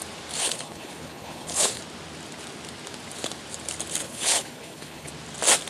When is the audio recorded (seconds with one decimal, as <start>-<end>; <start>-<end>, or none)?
0.0-0.4; 1.8-4.0; 5.1-5.7